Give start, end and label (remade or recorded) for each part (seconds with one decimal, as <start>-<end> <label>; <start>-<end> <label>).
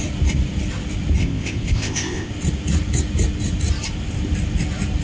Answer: 0.0-1.2 recorded; 1.2-2.3 remade; 2.3-5.0 recorded